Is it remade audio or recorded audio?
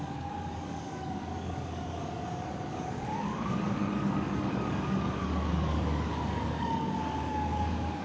remade